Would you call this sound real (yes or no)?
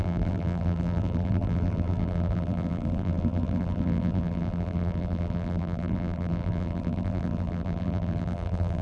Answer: no